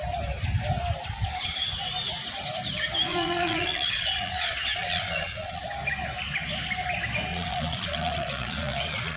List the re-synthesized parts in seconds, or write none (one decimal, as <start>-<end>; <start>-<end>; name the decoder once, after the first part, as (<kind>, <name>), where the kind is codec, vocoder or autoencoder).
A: 3.1-5.6 (vocoder, Vocos); 7.3-9.2